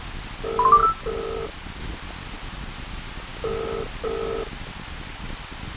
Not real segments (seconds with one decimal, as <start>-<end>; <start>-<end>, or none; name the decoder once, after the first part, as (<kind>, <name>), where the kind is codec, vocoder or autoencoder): none